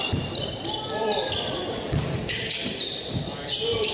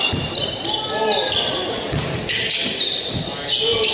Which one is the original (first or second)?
second